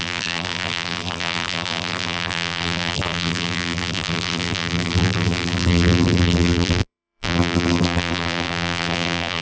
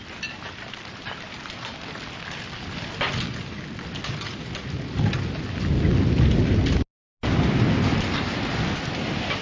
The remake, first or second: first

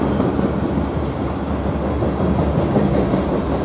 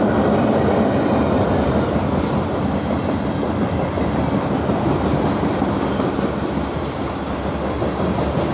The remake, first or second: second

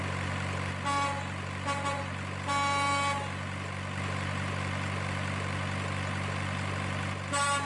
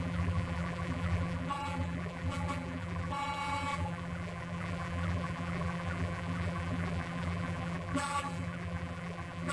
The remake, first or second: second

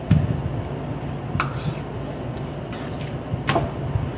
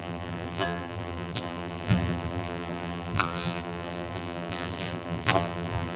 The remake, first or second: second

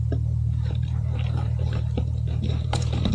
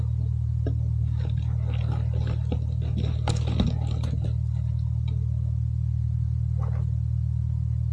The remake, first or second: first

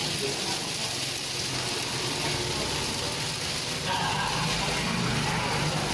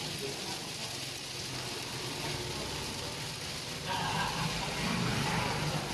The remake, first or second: second